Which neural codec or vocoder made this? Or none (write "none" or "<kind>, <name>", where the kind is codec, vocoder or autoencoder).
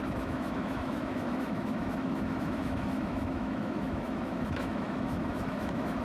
autoencoder, DAC-VAE